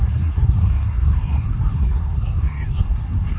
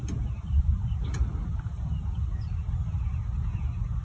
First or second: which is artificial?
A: first